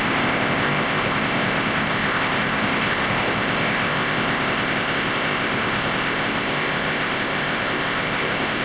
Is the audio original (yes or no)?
no